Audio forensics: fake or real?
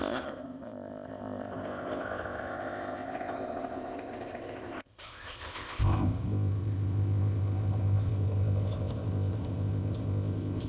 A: fake